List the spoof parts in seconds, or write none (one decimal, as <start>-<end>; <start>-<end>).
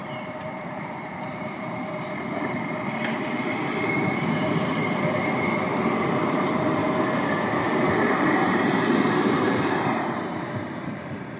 0.0-6.8; 8.0-11.4